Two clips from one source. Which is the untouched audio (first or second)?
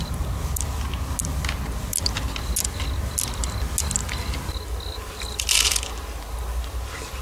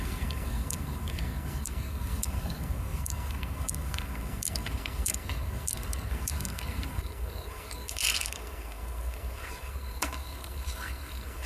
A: first